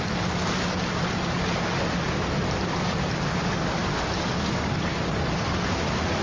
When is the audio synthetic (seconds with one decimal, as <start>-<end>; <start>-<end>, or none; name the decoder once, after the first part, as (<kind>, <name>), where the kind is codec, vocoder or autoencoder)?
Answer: none